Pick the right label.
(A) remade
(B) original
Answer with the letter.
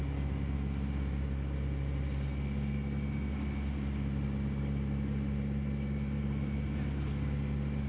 B